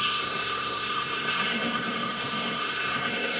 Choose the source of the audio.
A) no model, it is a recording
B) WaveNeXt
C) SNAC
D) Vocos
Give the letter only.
C